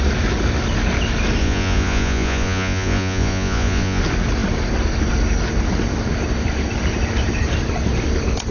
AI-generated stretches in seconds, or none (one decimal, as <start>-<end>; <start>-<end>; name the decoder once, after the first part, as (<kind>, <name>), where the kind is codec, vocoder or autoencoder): 1.4-4.0 (vocoder, Vocos)

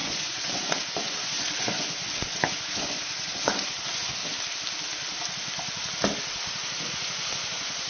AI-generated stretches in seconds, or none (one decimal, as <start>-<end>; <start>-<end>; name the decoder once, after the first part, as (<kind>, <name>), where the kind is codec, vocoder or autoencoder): 0.0-4.2 (vocoder, Vocos); 6.9-7.9